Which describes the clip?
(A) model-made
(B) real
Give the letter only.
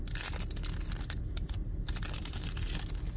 B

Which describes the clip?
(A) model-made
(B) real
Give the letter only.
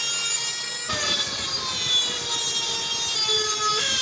B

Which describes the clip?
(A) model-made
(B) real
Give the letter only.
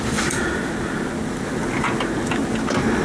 B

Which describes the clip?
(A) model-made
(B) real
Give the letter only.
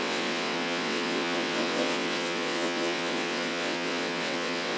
A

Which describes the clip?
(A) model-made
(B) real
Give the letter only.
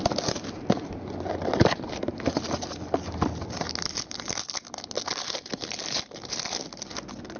B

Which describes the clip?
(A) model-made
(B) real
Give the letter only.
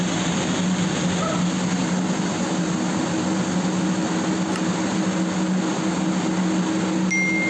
B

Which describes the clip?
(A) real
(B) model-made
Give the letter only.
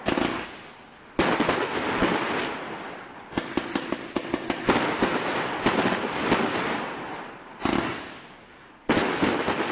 A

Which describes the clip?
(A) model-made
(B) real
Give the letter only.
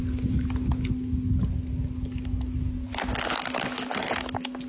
B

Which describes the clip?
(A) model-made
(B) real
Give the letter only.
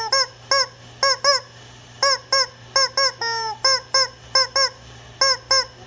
B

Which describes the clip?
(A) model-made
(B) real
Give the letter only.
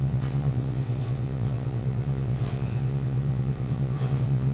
A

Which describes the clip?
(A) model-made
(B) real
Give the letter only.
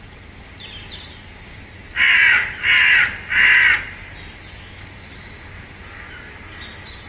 B